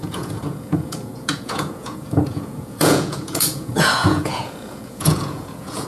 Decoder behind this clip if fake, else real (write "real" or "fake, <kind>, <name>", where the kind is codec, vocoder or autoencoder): fake, vocoder, Vocos